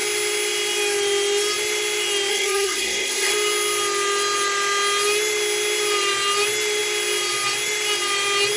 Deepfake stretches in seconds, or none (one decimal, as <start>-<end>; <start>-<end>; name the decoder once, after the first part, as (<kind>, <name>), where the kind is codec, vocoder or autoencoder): 2.3-3.3 (codec, SNAC)